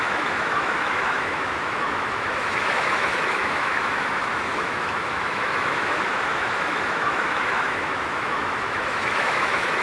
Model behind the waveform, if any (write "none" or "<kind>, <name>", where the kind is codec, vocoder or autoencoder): autoencoder, DAC-VAE